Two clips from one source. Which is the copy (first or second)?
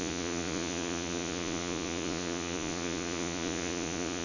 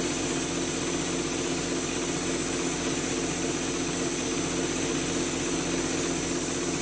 first